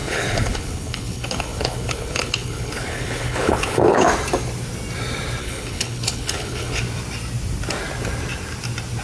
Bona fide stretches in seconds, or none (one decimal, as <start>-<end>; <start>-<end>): 4.1-5.4; 6.8-9.0